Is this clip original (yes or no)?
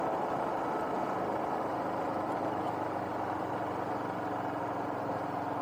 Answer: yes